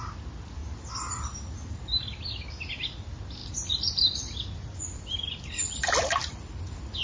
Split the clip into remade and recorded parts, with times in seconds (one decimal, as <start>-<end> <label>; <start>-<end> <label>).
0.0-3.4 recorded; 3.4-4.8 remade; 4.8-7.0 recorded